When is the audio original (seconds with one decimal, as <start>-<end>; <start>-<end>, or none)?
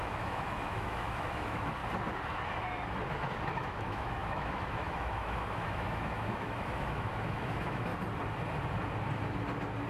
1.8-3.5; 7.9-9.9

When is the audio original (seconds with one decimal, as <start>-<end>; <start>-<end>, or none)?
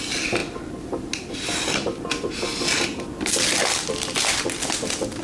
0.0-5.2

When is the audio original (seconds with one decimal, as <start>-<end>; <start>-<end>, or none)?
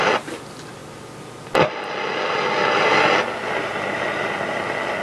0.0-5.0